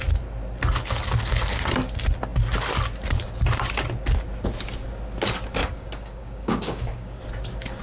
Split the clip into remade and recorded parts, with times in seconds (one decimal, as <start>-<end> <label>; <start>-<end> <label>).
0.0-5.6 recorded; 5.6-7.2 remade; 7.2-7.8 recorded

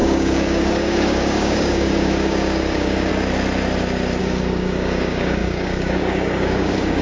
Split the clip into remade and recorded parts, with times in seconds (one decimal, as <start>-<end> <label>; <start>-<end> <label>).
0.0-3.1 remade; 3.1-4.2 recorded; 4.2-7.0 remade

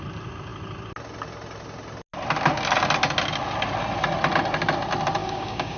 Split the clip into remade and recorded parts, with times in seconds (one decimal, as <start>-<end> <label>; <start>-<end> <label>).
0.0-5.2 recorded; 5.2-5.8 remade

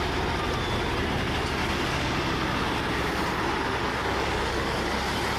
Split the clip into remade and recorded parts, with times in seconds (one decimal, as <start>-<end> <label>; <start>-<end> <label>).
0.0-1.6 recorded; 1.6-2.1 remade; 2.1-3.9 recorded; 3.9-4.9 remade; 4.9-5.4 recorded